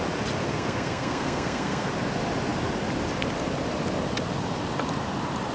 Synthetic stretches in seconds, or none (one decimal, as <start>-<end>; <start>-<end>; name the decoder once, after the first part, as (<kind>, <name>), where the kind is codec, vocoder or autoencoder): 0.4-1.9 (codec, SNAC)